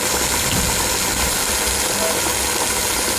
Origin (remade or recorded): recorded